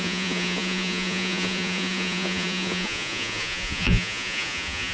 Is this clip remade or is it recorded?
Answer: remade